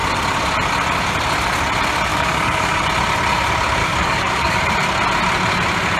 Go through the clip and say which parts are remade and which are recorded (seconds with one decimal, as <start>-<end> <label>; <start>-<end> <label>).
0.0-2.1 recorded; 2.1-2.8 remade; 2.8-3.8 recorded; 3.8-4.6 remade; 4.6-6.0 recorded